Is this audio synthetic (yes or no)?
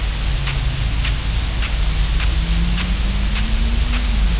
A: no